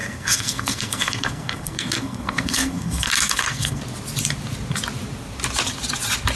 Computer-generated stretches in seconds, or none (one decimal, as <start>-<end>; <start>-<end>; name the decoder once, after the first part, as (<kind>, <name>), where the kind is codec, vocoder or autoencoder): 0.0-3.8 (codec, SNAC)